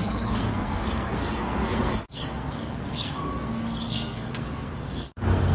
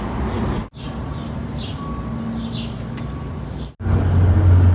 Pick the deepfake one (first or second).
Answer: first